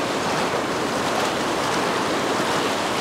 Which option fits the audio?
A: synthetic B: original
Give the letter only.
B